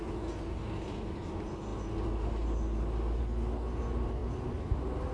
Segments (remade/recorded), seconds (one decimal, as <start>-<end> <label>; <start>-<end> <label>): 0.0-5.1 recorded